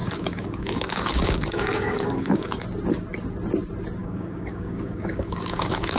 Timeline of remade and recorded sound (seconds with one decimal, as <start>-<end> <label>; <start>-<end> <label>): 0.0-2.6 remade; 2.6-4.0 recorded; 4.0-6.0 remade